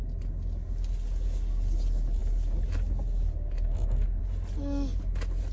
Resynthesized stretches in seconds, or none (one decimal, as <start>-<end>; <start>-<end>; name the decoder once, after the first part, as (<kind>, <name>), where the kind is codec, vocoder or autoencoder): none